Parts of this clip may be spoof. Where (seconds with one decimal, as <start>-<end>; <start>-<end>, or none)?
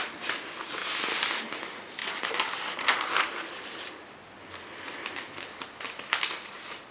none